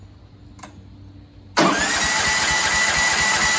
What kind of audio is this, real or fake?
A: real